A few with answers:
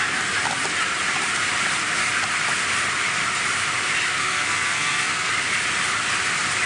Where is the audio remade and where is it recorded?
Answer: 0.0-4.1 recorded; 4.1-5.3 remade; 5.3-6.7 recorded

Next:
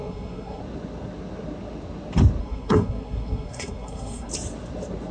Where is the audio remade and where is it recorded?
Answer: 0.0-0.6 remade; 0.6-2.4 recorded; 2.4-4.3 remade; 4.3-5.1 recorded

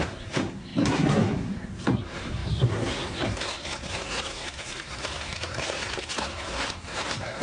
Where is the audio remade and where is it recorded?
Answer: 0.0-7.4 remade